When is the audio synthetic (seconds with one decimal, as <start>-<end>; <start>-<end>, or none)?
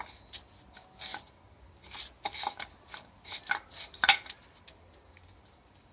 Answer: none